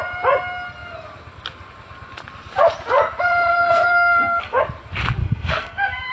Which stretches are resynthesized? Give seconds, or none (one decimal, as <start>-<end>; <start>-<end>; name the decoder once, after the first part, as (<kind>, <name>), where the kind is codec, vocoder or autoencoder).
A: 3.5-4.6 (codec, SNAC); 5.2-6.1